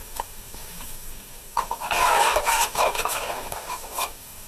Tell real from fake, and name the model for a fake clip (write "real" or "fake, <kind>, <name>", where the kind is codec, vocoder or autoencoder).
fake, codec, DAC